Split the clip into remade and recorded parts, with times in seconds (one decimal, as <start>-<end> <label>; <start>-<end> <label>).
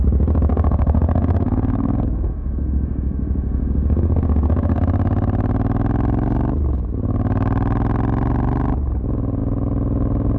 0.0-0.5 recorded; 0.5-4.8 remade; 4.8-10.4 recorded